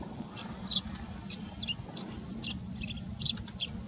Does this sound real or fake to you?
real